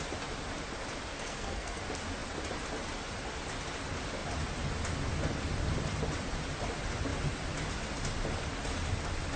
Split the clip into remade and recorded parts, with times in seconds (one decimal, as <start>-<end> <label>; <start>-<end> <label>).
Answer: 0.0-1.1 recorded; 1.1-1.8 remade; 1.8-9.4 recorded